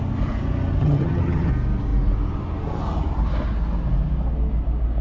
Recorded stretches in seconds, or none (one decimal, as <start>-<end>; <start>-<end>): 0.0-0.8; 1.5-5.0

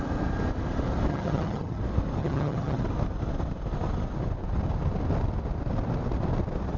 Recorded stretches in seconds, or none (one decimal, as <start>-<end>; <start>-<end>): 0.0-1.1; 1.8-2.2; 2.8-6.8

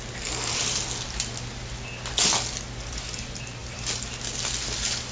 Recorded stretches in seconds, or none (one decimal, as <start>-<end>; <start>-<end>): 0.0-5.1

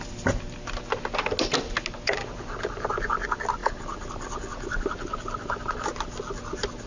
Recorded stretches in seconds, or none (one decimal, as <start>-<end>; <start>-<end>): 0.0-6.9

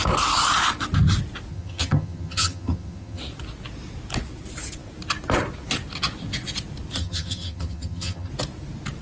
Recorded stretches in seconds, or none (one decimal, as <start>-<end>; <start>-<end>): 0.0-1.5; 3.2-7.0; 8.3-9.0

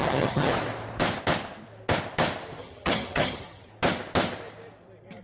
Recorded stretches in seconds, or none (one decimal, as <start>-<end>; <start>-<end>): 0.5-2.6; 3.7-5.2

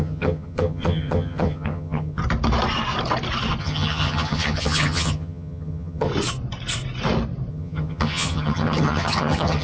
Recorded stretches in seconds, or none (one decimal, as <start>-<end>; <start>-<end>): 2.2-3.6; 6.1-7.5